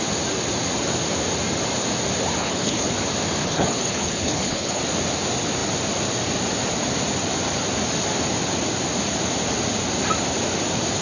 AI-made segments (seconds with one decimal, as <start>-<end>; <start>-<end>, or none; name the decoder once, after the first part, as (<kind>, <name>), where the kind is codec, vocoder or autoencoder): 2.4-2.9 (codec, HILCodec); 3.4-4.8